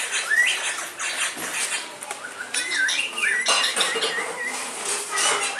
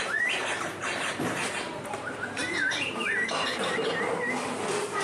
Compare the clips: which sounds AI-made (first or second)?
second